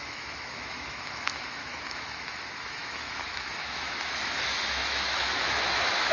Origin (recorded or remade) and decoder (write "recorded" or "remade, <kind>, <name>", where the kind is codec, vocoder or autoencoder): remade, autoencoder, DAC-VAE